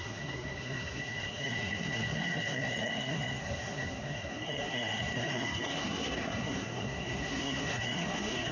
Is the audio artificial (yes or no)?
yes